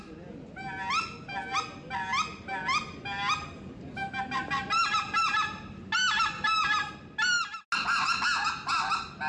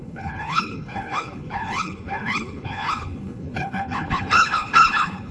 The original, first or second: first